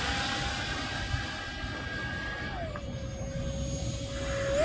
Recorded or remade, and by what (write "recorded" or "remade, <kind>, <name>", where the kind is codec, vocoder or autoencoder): recorded